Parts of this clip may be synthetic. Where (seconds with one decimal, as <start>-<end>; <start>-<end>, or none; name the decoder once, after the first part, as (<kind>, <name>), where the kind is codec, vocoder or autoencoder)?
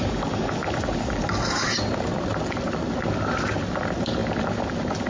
none